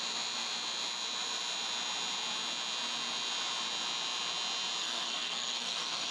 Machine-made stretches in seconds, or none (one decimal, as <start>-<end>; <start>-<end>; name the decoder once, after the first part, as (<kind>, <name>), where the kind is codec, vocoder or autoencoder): 4.8-6.1 (codec, SNAC)